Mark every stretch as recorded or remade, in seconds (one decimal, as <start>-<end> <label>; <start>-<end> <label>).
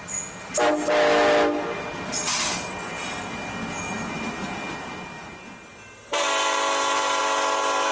0.0-7.9 recorded